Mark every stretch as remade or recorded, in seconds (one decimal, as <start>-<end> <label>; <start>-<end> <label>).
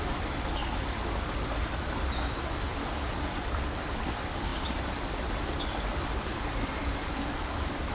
0.0-6.3 recorded; 6.3-7.9 remade